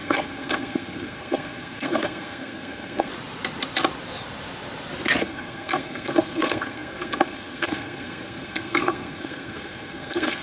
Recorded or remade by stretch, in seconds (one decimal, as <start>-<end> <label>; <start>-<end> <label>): 0.0-3.1 remade; 3.1-5.2 recorded; 5.2-10.4 remade